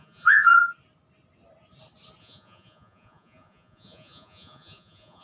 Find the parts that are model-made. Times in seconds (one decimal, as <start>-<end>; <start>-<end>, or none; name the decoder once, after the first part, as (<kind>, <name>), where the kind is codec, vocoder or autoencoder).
0.0-0.6 (vocoder, Vocos); 2.2-5.2